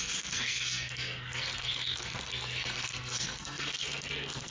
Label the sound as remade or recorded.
remade